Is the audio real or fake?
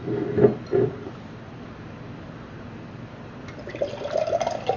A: real